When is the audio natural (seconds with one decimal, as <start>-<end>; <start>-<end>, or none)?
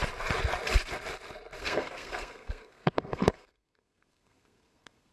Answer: 0.0-1.6